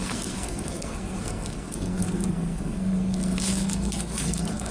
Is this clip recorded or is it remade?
remade